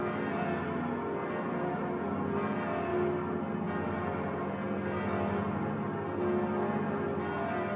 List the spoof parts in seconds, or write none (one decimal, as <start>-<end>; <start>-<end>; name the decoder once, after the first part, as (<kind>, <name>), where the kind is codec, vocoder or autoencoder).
none